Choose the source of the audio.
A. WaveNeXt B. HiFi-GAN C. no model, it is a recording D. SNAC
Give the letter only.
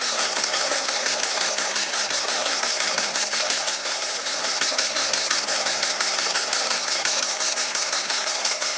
D